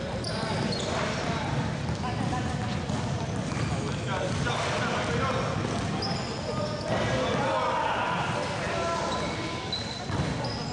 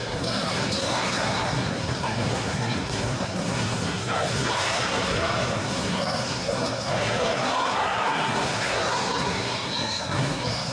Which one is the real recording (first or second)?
first